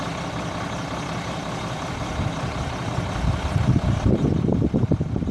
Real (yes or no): yes